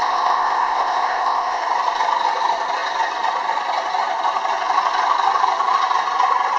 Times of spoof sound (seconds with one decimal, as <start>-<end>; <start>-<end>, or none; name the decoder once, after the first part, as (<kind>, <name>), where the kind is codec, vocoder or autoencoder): 0.0-1.6 (codec, ZipCodec)